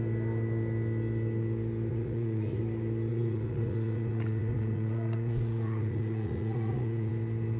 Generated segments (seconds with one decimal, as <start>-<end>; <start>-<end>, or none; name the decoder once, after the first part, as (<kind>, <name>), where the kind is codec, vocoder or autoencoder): 1.9-2.6 (vocoder, Vocos); 3.1-7.1